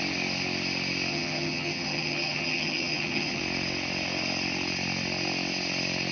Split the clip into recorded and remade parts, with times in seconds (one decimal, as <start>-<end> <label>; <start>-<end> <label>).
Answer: 0.0-1.1 recorded; 1.1-3.4 remade; 3.4-6.1 recorded

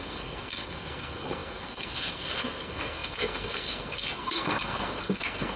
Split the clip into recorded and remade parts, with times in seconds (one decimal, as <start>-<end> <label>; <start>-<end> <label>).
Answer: 0.0-5.6 remade

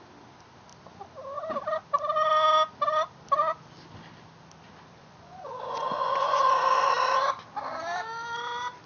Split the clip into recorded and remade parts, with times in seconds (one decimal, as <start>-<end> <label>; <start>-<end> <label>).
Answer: 0.0-5.0 recorded; 5.0-6.7 remade; 6.7-8.9 recorded

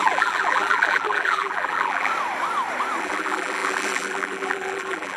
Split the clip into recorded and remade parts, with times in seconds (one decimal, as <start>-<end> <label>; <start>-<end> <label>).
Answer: 0.0-2.1 remade; 2.1-3.0 recorded; 3.0-5.2 remade

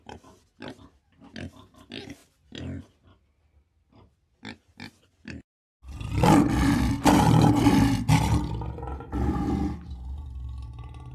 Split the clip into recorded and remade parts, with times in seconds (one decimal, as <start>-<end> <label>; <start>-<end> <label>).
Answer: 0.0-11.1 recorded

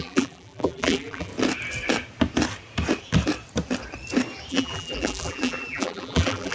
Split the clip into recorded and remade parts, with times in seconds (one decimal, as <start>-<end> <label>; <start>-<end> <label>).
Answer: 0.0-1.3 remade; 1.3-4.5 recorded; 4.5-6.5 remade

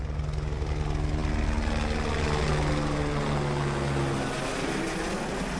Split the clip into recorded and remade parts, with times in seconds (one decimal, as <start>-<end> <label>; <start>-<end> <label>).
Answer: 0.0-5.6 recorded